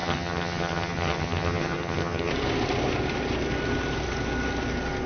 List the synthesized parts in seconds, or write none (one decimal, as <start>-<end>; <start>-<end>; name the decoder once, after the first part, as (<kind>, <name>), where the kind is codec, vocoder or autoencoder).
0.0-2.3 (vocoder, HiFi-GAN)